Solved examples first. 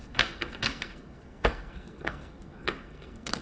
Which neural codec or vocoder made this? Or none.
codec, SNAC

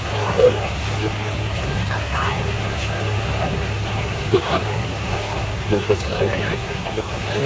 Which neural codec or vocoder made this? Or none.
codec, SNAC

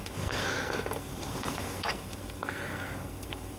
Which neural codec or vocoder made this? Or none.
codec, SNAC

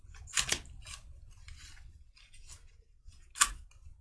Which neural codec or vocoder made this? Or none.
none